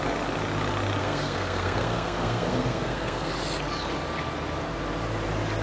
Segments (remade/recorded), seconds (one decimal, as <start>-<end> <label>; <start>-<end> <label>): 0.0-1.0 recorded; 1.0-3.3 remade; 3.3-5.6 recorded